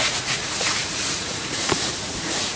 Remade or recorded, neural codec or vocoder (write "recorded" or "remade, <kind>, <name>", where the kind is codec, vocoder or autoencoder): remade, vocoder, Vocos